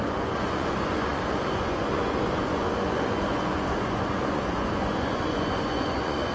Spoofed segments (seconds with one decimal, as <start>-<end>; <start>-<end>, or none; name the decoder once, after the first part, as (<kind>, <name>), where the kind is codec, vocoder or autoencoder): 0.0-6.3 (vocoder, Vocos)